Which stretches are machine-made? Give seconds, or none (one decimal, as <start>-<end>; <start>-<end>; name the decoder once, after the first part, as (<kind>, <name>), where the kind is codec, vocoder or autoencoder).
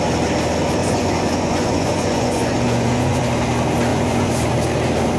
0.8-3.2 (vocoder, Vocos); 3.9-4.5